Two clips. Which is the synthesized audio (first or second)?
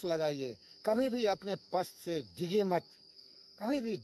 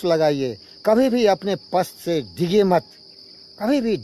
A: first